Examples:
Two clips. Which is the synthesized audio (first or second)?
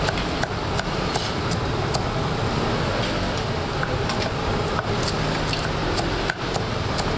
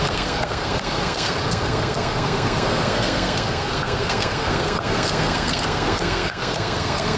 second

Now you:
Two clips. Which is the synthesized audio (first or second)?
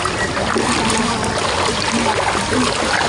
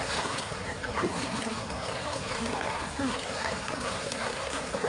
second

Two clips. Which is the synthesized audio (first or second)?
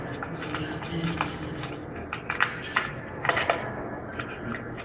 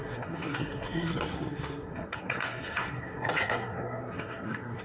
second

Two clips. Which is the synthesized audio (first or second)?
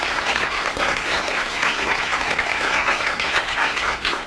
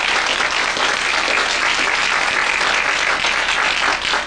first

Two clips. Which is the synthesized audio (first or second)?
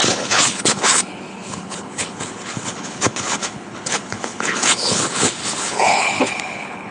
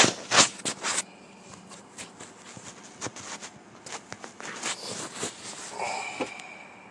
first